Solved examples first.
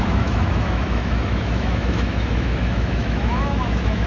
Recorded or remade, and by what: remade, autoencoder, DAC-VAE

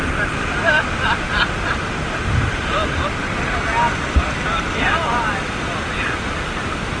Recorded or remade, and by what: recorded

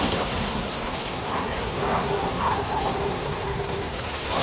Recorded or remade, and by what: remade, codec, SNAC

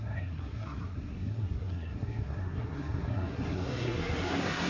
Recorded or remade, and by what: remade, codec, SNAC